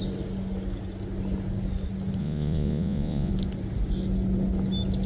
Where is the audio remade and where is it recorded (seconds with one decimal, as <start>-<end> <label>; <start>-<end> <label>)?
0.0-2.2 recorded; 2.2-3.3 remade; 3.3-5.1 recorded